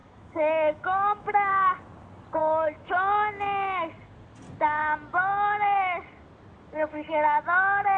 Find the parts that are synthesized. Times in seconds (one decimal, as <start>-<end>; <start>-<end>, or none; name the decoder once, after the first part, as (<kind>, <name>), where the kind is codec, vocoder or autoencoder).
0.0-1.5 (autoencoder, DAC-VAE); 2.4-2.9